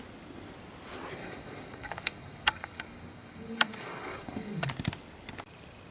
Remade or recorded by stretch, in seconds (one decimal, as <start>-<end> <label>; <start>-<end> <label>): 0.0-1.2 recorded; 1.2-4.7 remade; 4.7-5.9 recorded